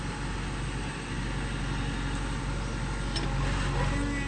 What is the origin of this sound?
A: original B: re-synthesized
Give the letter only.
A